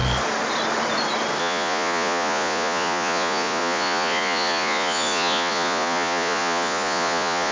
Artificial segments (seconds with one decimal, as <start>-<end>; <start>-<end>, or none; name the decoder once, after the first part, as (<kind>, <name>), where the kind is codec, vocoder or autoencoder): 1.4-7.5 (vocoder, Vocos)